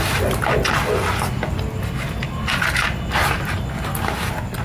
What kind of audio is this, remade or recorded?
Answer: recorded